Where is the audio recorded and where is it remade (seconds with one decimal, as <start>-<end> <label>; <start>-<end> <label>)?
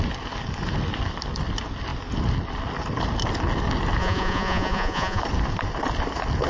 0.0-4.0 recorded; 4.0-5.2 remade; 5.2-6.5 recorded